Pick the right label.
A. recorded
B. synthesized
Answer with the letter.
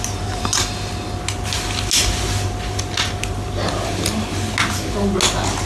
A